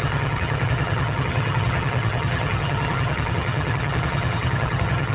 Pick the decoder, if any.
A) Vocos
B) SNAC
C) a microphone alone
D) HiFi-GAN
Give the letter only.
D